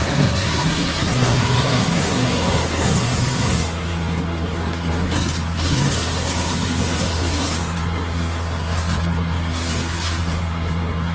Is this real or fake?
fake